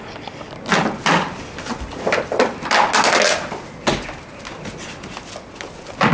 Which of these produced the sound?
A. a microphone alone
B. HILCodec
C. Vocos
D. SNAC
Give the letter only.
A